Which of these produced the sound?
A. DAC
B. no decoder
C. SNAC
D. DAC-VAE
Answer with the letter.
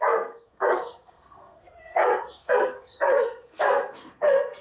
C